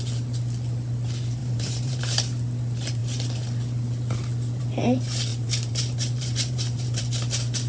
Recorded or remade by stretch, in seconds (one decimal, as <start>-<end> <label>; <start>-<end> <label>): 0.0-1.4 recorded; 1.4-2.0 remade; 2.0-5.3 recorded; 5.3-7.0 remade; 7.0-7.7 recorded